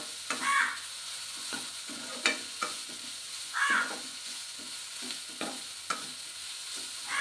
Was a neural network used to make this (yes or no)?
yes